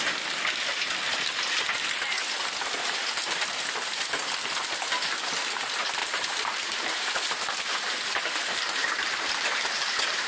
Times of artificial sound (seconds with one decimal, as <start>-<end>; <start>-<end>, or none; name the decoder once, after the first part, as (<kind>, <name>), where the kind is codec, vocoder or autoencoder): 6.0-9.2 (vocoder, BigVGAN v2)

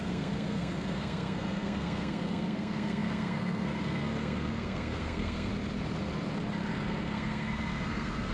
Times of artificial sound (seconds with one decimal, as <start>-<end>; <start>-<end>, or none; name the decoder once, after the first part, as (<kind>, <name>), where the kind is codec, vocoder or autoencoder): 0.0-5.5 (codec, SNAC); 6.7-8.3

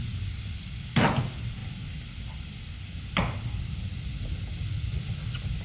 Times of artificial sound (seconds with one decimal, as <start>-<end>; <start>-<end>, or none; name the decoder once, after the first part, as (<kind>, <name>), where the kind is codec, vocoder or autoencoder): none

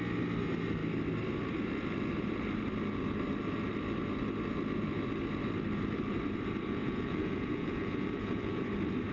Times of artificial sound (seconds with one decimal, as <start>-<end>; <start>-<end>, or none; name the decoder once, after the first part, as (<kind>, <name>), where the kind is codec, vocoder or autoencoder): 6.8-8.6 (vocoder, Vocos)